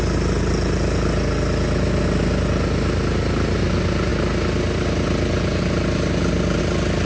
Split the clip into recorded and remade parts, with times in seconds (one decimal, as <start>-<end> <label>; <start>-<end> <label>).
0.0-7.1 recorded